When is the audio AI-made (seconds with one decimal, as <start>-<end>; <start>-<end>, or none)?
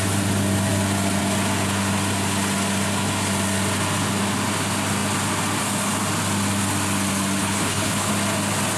7.4-8.1